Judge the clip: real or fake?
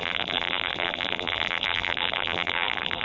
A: fake